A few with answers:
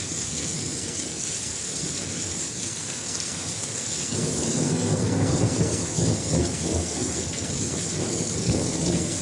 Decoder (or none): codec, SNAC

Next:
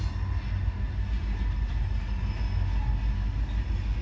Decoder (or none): none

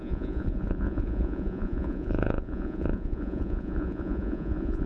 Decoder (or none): vocoder, Vocos